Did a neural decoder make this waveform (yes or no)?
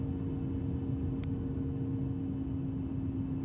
no